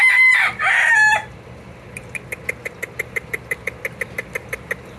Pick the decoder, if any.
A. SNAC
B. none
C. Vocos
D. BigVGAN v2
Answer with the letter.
B